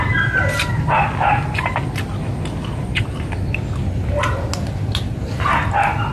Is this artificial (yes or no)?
no